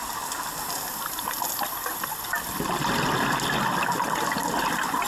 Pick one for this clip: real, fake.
real